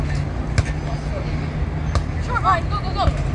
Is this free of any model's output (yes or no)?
yes